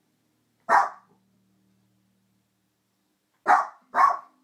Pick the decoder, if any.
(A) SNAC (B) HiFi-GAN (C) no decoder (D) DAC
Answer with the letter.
C